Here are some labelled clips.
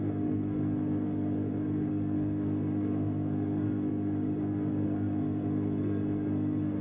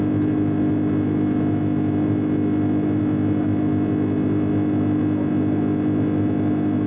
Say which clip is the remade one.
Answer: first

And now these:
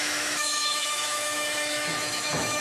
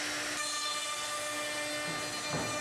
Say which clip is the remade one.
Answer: first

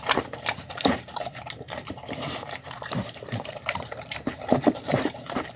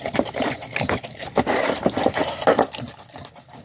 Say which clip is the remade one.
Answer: first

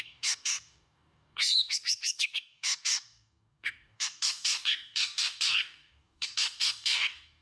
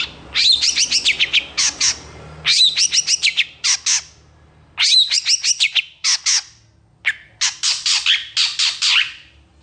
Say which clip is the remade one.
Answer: first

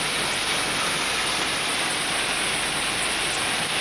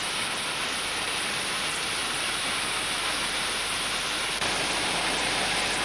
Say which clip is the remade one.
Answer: second